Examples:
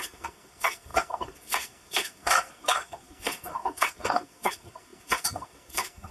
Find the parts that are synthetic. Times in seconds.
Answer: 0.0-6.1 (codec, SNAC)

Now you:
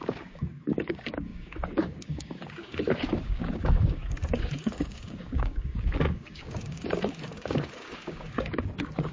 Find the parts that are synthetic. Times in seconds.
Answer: 0.0-9.1 (codec, DAC)

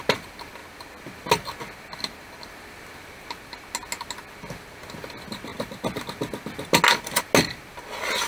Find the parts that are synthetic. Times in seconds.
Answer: none

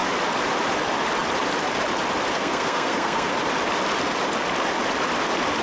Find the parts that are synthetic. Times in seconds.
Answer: 2.4-3.3 (codec, SNAC)